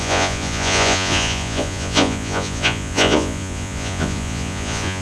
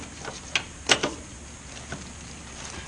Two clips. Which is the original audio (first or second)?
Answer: second